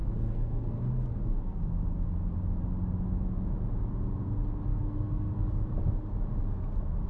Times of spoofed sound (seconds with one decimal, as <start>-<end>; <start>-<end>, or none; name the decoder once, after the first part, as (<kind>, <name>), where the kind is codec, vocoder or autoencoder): 0.0-1.6 (codec, SNAC); 4.7-5.5